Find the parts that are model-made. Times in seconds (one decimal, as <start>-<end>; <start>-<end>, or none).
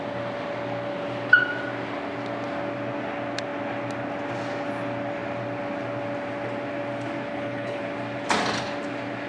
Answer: 7.3-7.8